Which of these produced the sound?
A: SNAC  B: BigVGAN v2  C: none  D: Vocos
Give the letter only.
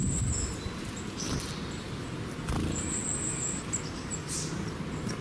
C